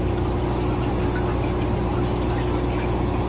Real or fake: real